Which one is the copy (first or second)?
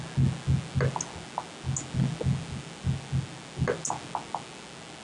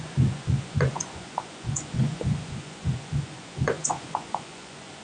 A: second